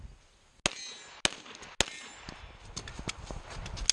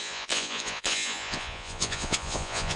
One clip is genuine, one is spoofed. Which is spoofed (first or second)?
second